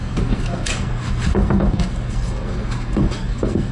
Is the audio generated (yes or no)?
yes